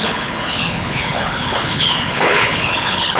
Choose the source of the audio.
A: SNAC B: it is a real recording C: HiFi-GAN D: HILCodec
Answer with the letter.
D